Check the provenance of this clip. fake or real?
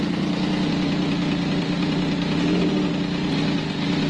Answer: real